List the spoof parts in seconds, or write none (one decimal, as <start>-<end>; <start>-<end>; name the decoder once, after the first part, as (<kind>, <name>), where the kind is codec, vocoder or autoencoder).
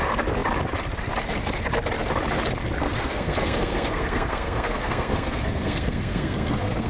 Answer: 2.8-6.9 (codec, SNAC)